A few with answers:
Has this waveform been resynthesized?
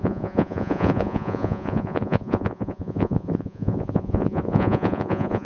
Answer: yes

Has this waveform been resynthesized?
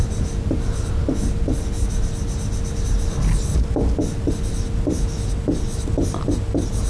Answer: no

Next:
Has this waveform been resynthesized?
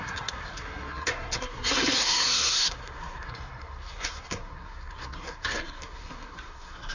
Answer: yes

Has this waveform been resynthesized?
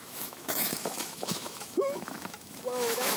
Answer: yes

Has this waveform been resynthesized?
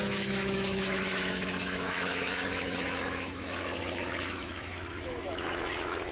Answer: yes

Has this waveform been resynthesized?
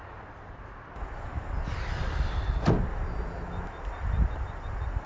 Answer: no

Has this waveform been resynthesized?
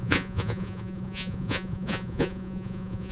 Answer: yes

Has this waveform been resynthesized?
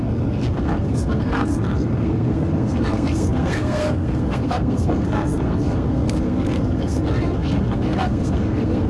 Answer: yes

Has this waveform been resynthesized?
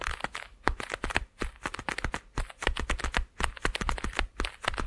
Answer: no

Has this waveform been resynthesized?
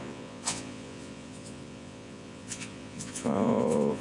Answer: yes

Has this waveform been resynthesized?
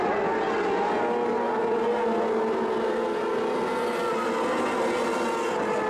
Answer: no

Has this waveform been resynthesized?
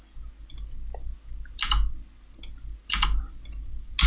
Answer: no